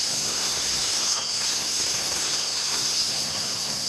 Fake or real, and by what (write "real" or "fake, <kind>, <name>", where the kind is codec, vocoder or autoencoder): fake, codec, SNAC